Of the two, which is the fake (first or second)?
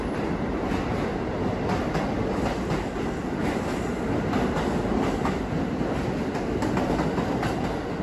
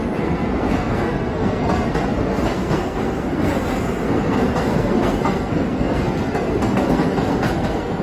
second